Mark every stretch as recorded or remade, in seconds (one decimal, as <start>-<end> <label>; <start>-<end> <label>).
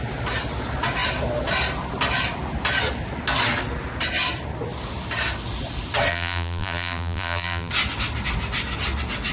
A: 0.0-6.1 recorded; 6.1-7.7 remade; 7.7-9.3 recorded